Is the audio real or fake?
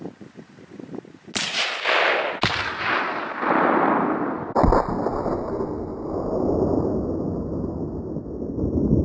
real